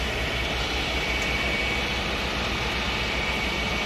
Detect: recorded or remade recorded